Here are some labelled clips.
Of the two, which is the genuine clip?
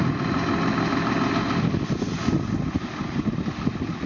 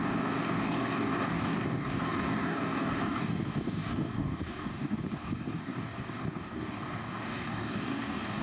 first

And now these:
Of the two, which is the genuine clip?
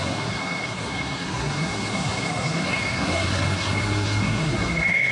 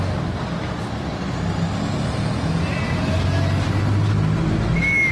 second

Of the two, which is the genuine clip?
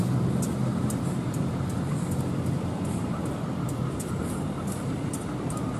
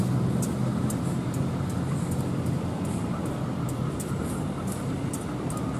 second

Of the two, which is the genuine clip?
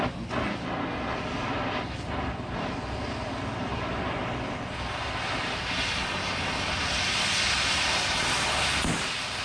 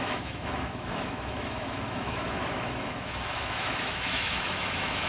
first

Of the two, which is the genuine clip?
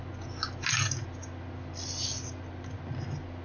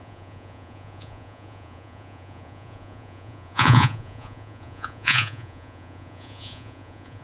first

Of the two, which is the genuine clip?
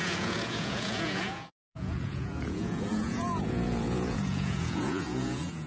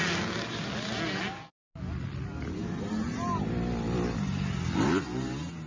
second